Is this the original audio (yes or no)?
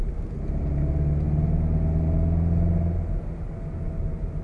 yes